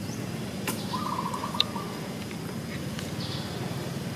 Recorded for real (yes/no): yes